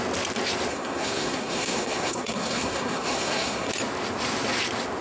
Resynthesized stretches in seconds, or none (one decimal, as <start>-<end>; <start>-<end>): 0.7-3.7